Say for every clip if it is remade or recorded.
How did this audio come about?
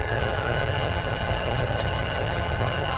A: remade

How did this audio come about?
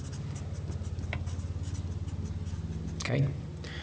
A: recorded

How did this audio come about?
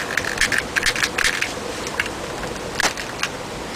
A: recorded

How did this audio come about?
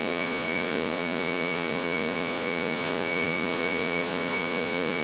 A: remade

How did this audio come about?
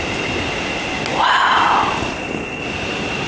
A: recorded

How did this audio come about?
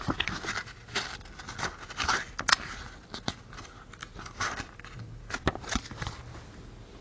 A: recorded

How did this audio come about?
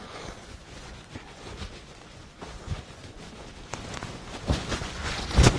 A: remade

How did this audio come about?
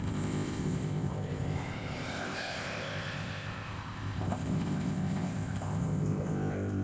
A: remade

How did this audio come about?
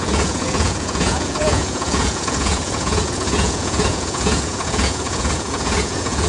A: remade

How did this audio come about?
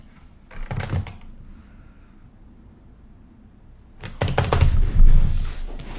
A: recorded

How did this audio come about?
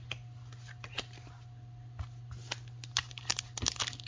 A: recorded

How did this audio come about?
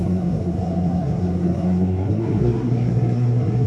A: remade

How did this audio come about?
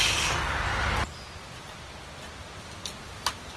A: recorded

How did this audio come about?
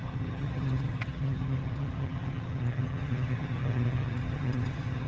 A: remade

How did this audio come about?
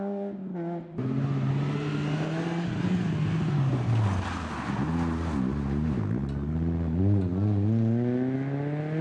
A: recorded